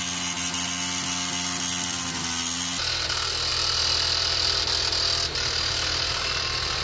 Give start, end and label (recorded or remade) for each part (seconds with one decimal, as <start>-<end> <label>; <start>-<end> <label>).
0.0-6.8 recorded